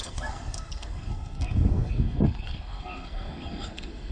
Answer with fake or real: fake